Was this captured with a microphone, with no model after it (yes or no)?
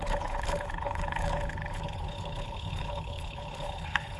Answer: no